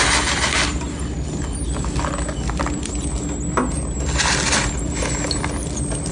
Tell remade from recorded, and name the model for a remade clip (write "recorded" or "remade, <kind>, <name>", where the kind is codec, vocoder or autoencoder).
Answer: recorded